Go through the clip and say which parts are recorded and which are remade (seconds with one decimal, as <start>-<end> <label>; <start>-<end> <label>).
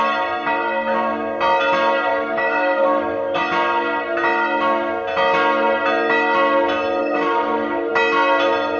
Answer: 0.0-2.1 recorded; 2.1-3.4 remade; 3.4-7.0 recorded; 7.0-7.9 remade; 7.9-8.8 recorded